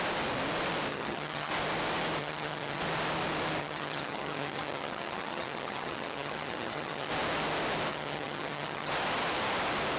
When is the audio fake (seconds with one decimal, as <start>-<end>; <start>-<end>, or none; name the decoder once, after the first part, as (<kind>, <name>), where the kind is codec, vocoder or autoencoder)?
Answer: 0.9-1.5 (vocoder, HiFi-GAN); 2.2-2.8; 3.6-7.1; 7.9-8.9